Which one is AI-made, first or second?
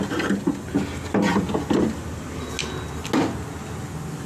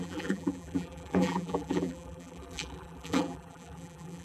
second